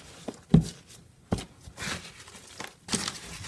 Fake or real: real